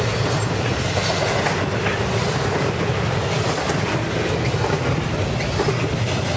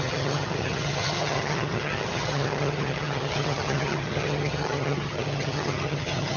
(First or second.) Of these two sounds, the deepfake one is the second